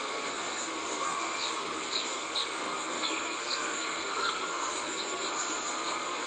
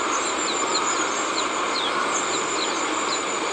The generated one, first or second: first